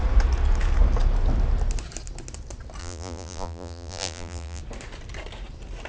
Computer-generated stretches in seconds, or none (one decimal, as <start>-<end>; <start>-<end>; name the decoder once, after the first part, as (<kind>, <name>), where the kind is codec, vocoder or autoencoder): 2.8-4.6 (vocoder, BigVGAN v2)